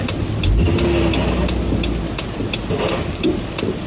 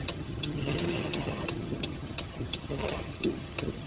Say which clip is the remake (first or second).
second